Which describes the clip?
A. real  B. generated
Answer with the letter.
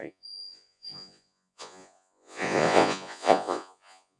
B